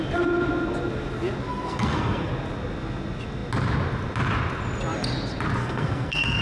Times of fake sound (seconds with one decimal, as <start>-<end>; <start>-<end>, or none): 1.5-2.3; 5.6-6.4